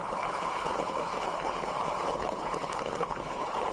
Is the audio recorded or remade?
remade